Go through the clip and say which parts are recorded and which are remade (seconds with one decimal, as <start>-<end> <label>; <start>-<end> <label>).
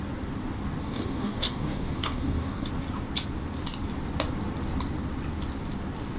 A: 0.0-0.8 recorded; 0.8-2.7 remade; 2.7-6.2 recorded